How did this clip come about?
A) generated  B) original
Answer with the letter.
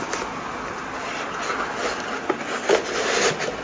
B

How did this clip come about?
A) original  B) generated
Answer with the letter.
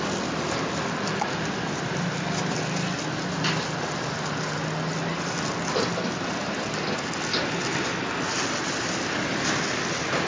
A